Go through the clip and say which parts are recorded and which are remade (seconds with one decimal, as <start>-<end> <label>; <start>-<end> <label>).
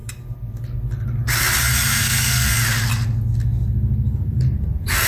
0.0-2.0 recorded; 2.0-2.5 remade; 2.5-5.1 recorded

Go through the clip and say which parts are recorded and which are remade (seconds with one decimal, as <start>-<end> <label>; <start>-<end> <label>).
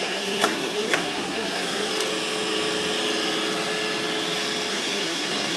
0.0-1.9 remade; 1.9-4.7 recorded; 4.7-5.6 remade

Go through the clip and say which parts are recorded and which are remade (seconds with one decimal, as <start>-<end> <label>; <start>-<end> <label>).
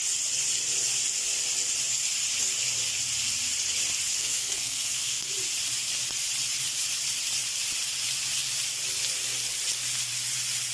0.0-4.1 recorded; 4.1-5.3 remade; 5.3-10.7 recorded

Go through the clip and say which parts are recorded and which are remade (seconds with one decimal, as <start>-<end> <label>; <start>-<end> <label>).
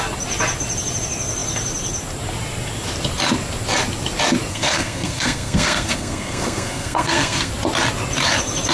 0.0-4.5 recorded; 4.5-7.5 remade; 7.5-8.7 recorded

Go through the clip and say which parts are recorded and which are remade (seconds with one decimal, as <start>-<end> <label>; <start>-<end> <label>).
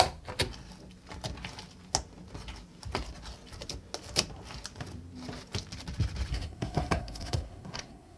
0.0-6.3 recorded; 6.3-8.2 remade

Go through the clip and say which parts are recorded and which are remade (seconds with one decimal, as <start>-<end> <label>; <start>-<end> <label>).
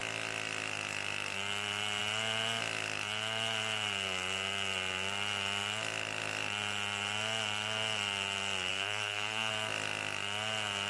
0.0-8.7 recorded; 8.7-9.5 remade; 9.5-10.9 recorded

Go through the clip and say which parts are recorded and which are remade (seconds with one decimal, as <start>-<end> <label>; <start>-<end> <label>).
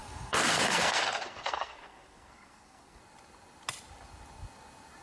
0.0-3.0 remade; 3.0-5.0 recorded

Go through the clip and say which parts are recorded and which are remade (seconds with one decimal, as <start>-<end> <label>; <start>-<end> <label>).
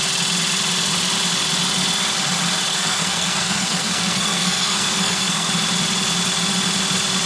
0.0-2.7 recorded; 2.7-5.5 remade; 5.5-7.3 recorded